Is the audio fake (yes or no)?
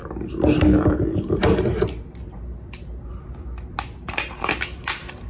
no